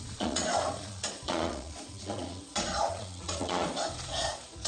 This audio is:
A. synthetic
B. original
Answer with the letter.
A